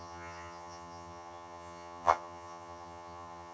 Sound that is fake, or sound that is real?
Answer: fake